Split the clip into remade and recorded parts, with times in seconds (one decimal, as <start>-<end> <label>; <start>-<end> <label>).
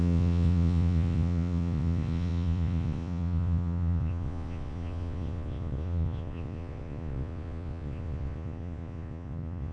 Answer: 0.0-9.7 remade